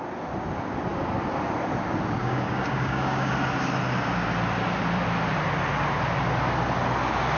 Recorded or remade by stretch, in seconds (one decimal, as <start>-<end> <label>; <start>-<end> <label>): 0.0-2.2 recorded; 2.2-3.3 remade; 3.3-7.4 recorded